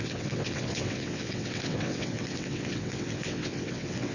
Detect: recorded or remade remade